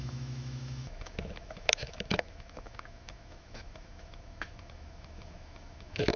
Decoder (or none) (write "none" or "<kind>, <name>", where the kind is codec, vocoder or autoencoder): autoencoder, DAC-VAE